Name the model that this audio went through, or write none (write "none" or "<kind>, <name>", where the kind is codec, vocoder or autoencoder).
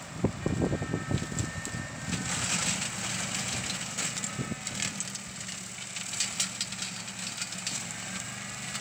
none